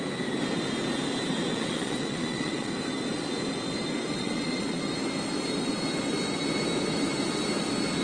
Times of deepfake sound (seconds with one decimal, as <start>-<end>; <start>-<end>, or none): 1.5-2.7; 4.1-4.8